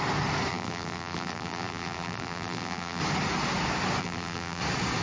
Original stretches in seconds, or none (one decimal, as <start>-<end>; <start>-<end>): 0.0-0.5; 3.0-4.0; 4.6-5.0